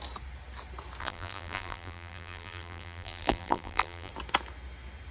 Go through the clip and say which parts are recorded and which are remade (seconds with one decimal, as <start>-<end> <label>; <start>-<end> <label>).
0.0-1.0 recorded; 1.0-4.1 remade; 4.1-5.1 recorded